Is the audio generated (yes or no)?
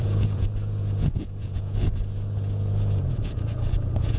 yes